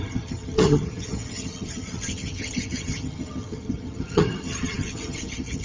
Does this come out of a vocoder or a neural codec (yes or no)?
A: yes